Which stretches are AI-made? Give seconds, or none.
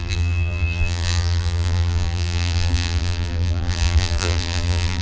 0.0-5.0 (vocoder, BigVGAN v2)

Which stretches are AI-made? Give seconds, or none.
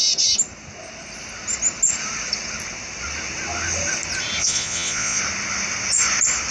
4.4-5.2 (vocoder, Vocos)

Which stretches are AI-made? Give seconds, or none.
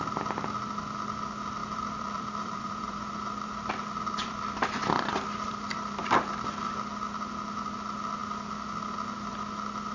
1.6-3.1 (vocoder, BigVGAN v2); 4.2-6.5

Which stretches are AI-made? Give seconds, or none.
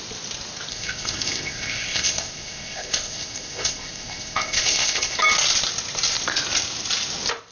0.7-5.2 (codec, ZipCodec)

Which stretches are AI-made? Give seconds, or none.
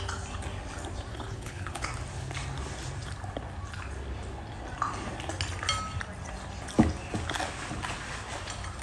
1.1-1.9 (codec, HILCodec)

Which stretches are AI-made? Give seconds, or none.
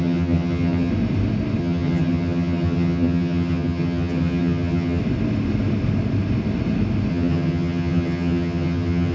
0.0-0.9 (vocoder, HiFi-GAN); 1.6-5.0; 7.1-9.1